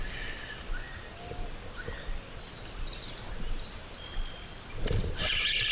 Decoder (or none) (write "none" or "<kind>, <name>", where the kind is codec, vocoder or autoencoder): none